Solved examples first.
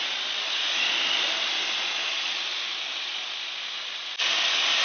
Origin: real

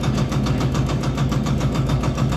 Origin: fake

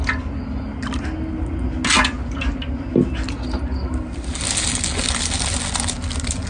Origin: real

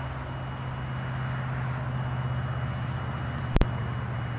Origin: real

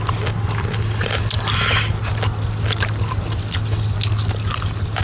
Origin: real